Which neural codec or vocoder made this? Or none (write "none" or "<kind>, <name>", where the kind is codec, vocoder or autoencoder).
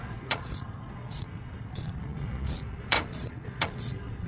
vocoder, Vocos